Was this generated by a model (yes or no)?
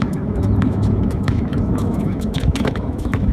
yes